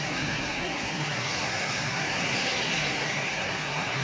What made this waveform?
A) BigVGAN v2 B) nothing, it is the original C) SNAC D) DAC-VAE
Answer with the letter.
C